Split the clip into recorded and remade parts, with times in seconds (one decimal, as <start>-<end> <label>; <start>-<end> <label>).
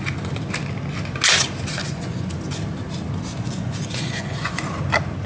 0.0-1.8 recorded; 1.8-2.3 remade; 2.3-3.3 recorded; 3.3-4.6 remade; 4.6-5.3 recorded